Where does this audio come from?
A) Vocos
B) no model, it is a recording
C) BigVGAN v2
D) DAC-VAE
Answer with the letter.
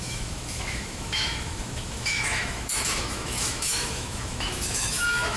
D